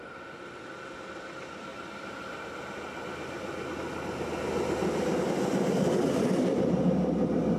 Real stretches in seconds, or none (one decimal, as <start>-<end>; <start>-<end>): 0.0-7.6